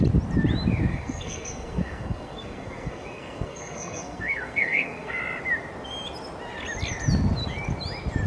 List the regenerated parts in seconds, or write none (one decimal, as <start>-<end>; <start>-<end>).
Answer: 0.9-5.2